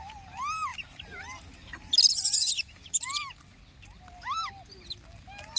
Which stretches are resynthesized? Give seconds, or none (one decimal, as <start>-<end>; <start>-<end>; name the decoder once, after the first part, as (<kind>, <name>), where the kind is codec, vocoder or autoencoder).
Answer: none